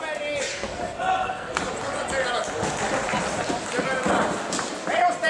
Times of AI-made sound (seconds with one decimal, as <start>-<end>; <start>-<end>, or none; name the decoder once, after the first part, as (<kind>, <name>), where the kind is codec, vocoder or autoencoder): 0.5-1.6 (codec, SNAC)